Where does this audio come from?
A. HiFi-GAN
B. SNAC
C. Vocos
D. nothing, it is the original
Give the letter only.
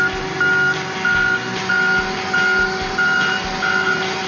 D